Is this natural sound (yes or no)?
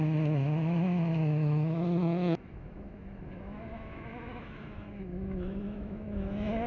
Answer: no